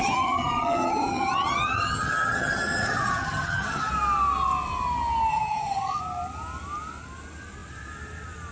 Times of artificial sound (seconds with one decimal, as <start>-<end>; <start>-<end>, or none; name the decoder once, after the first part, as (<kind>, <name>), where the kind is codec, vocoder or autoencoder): 0.0-3.9 (vocoder, HiFi-GAN); 5.3-6.0